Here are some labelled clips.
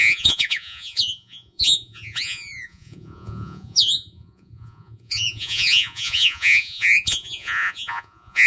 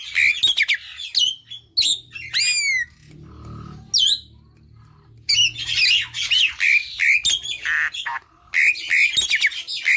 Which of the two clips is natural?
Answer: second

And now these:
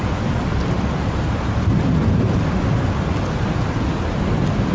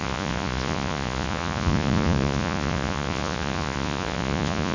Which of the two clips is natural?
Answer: first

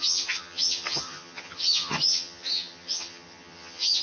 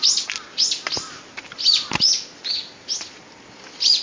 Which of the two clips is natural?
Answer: second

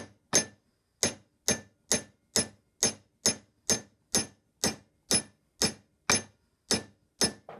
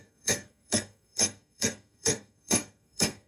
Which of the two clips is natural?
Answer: first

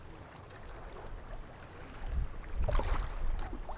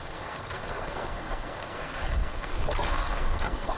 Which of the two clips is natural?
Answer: first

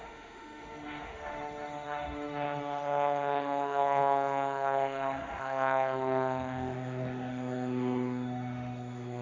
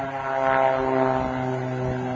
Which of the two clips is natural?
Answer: second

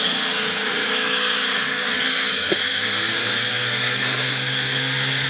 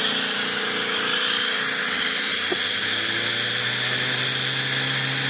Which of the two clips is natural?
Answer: second